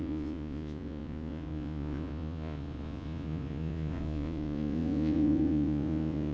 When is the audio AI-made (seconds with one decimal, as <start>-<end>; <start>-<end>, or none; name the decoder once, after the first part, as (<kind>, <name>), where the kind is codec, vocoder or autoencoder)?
0.0-6.3 (vocoder, Vocos)